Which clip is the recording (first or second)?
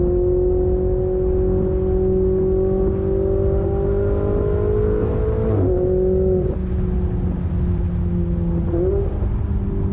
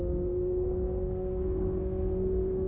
first